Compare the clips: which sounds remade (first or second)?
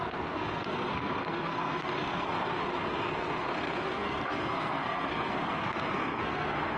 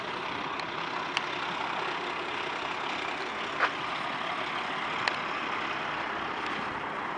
first